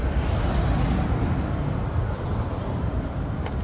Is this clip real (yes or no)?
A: yes